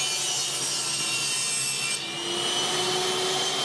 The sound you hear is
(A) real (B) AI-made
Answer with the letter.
A